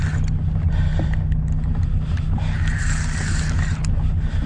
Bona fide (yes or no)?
yes